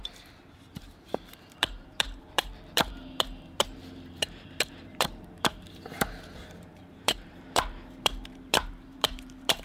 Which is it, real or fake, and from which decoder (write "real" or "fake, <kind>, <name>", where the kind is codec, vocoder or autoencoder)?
fake, vocoder, BigVGAN v2